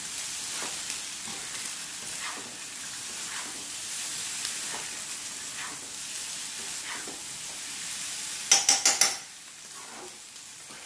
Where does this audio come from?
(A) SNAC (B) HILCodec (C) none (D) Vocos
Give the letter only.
C